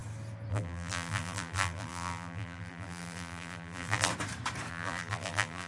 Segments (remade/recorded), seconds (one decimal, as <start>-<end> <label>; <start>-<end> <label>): 0.0-0.5 recorded; 0.5-4.1 remade; 4.1-4.7 recorded; 4.7-5.7 remade